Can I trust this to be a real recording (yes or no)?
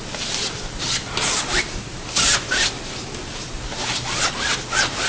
yes